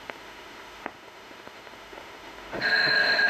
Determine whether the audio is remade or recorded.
remade